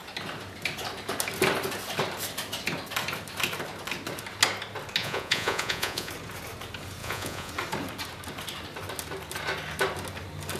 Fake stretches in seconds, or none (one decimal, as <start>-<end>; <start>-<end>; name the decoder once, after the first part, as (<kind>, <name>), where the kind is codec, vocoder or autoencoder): 5.0-6.1 (vocoder, Vocos); 7.0-7.5